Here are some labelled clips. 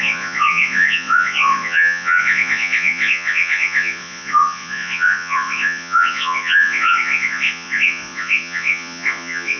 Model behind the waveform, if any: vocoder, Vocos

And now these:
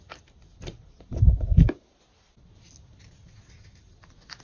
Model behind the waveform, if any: none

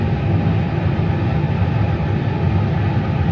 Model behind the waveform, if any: none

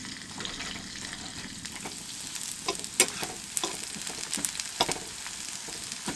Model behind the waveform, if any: none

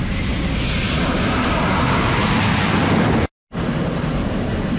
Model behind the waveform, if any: none